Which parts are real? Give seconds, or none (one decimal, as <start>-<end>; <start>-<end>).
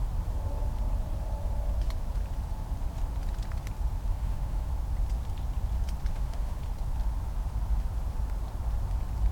0.0-4.1; 4.7-6.1; 6.6-9.3